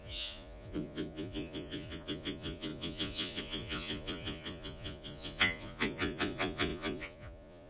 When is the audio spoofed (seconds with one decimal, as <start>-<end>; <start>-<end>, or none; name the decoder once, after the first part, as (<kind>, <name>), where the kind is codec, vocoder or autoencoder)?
0.0-7.7 (vocoder, Vocos)